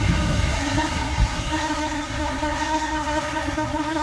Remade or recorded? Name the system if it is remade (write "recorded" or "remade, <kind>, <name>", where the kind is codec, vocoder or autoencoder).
remade, codec, SNAC